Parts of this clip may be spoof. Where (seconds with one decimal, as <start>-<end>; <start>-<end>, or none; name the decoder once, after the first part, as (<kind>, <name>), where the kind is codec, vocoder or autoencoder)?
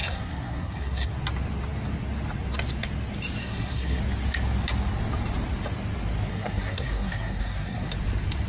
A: 0.0-1.1 (codec, SNAC); 3.4-4.0; 6.3-7.9